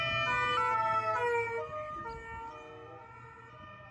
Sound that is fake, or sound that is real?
real